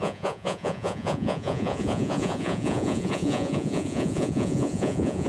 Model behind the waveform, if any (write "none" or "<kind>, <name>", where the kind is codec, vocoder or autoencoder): vocoder, Vocos